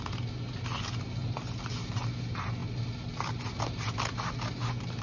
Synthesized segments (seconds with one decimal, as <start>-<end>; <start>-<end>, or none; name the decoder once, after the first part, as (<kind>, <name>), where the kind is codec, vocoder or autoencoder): none